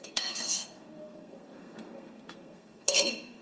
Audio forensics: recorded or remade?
remade